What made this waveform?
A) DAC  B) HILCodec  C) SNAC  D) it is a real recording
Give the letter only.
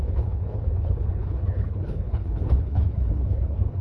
B